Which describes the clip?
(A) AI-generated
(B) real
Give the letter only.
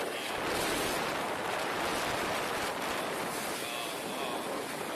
B